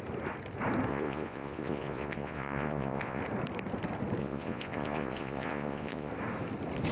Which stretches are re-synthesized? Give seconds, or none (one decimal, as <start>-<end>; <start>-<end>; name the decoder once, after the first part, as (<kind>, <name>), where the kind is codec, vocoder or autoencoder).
0.9-3.2 (vocoder, Vocos); 4.2-6.1

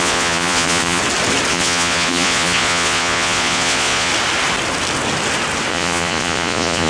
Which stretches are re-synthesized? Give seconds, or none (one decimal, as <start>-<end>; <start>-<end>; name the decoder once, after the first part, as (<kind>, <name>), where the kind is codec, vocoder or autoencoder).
0.0-1.0 (vocoder, Vocos); 1.5-4.1; 5.7-6.9

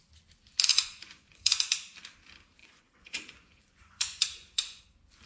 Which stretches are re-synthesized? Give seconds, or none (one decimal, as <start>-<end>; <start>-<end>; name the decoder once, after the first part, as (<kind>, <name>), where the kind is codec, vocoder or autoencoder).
0.7-1.6 (vocoder, Vocos); 2.6-4.8

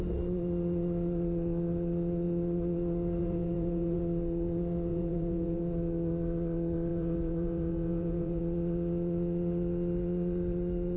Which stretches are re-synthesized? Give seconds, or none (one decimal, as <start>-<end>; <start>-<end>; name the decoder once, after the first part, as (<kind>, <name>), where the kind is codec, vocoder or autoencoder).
3.2-4.0 (vocoder, Vocos); 4.9-5.6; 6.9-8.4

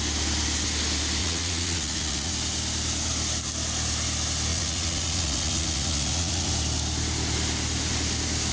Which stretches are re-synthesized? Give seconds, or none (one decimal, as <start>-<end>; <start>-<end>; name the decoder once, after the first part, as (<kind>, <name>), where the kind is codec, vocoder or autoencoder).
1.2-2.3 (vocoder, Vocos); 4.5-6.5

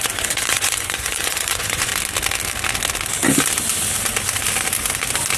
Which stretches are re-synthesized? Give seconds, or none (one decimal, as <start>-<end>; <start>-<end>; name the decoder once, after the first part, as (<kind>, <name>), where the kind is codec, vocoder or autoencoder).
0.0-1.9 (vocoder, Vocos)

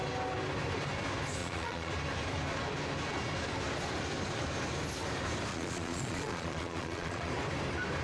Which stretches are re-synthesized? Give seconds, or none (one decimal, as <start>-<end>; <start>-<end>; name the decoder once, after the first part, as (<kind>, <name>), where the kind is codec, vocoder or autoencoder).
1.4-1.9 (vocoder, Vocos); 5.5-7.3

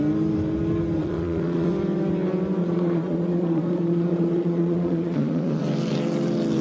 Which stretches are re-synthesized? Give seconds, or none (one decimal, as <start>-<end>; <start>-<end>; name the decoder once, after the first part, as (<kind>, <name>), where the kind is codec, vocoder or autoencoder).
1.0-1.7 (vocoder, Vocos); 2.6-5.6